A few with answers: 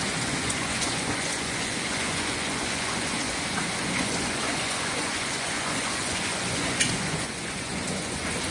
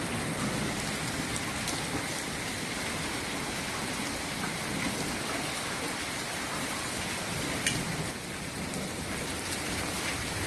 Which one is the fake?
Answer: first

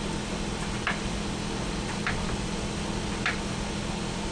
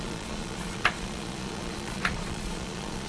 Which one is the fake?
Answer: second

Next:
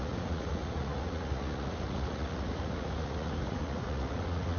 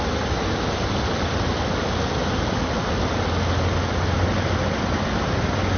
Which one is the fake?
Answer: first